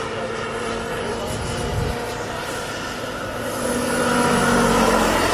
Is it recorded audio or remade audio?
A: recorded